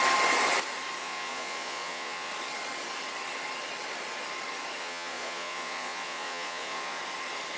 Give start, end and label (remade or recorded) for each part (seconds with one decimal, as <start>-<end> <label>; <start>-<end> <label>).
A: 0.0-1.0 recorded; 1.0-2.3 remade; 2.3-4.8 recorded; 4.8-7.0 remade; 7.0-7.6 recorded